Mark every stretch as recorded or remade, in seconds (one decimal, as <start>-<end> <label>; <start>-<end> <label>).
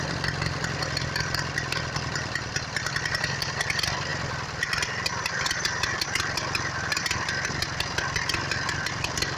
0.0-9.4 remade